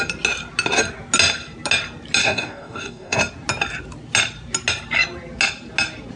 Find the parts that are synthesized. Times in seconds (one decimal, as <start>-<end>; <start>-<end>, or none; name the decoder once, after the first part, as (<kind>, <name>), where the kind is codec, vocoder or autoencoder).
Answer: 2.2-3.2 (codec, DAC)